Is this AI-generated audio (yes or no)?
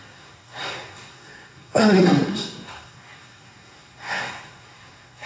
yes